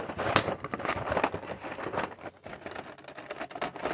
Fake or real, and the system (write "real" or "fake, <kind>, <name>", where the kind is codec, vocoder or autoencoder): real